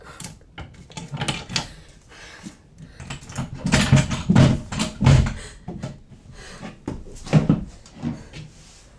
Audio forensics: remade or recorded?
recorded